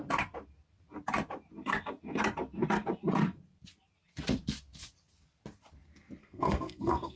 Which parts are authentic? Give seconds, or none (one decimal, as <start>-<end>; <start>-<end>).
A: 0.0-6.2